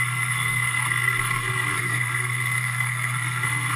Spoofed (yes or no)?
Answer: yes